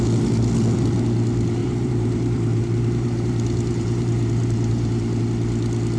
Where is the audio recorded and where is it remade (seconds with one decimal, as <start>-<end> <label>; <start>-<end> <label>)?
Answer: 0.0-1.6 recorded; 1.6-5.2 remade; 5.2-6.0 recorded